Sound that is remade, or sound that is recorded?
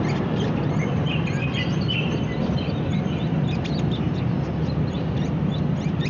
remade